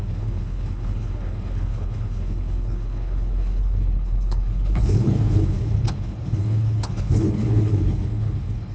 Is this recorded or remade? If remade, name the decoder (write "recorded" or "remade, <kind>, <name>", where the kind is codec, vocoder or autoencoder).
remade, codec, HILCodec